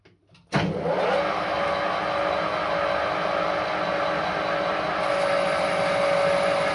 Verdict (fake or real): real